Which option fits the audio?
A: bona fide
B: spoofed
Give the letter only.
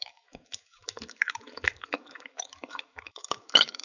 B